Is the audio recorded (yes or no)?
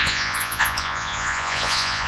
no